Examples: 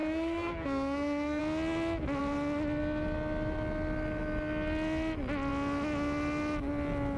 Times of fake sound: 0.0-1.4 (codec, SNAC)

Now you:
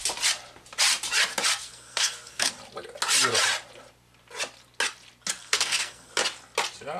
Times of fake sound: 1.5-2.5 (codec, SNAC); 5.4-6.1

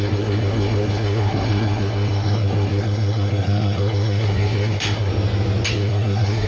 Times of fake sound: 0.0-5.1 (codec, SNAC); 5.7-6.5